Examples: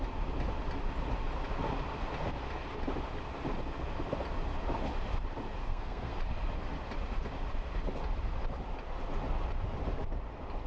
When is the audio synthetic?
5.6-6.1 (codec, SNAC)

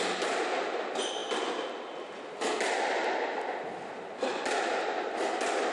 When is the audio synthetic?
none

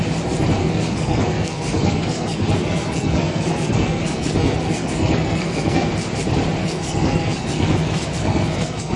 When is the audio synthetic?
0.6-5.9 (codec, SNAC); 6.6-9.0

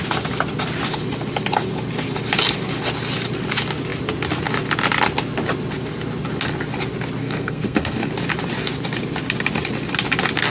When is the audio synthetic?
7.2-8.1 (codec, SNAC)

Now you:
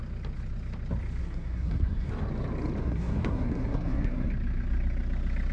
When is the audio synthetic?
1.2-2.1 (codec, SNAC); 2.8-4.3